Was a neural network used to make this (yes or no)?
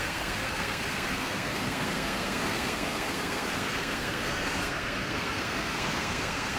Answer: yes